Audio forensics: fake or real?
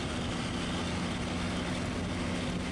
real